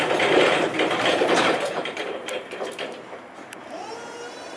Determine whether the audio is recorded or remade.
remade